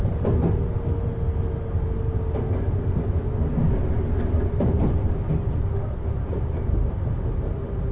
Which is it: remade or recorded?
recorded